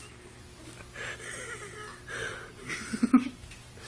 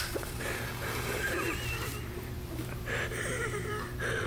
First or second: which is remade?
second